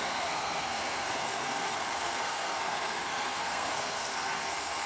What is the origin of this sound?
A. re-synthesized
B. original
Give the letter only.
A